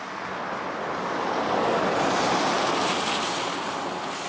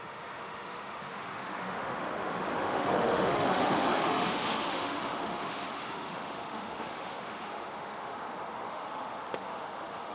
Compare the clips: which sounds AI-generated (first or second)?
second